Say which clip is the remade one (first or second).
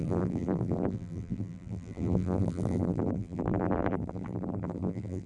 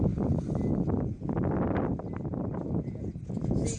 first